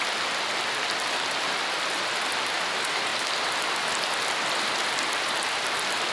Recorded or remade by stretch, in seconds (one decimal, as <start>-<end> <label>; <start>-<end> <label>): 0.0-3.1 remade; 3.1-3.9 recorded; 3.9-6.1 remade